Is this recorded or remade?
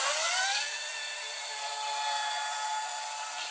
recorded